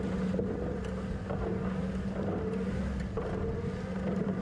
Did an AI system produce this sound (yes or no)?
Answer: no